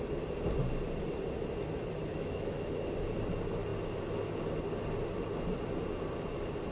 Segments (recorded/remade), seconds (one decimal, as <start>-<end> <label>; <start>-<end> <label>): 0.0-2.1 recorded; 2.1-2.7 remade; 2.7-6.7 recorded